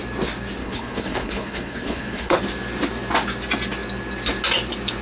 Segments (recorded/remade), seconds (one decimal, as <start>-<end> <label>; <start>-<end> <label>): 0.0-0.6 recorded; 0.6-2.4 remade; 2.4-5.0 recorded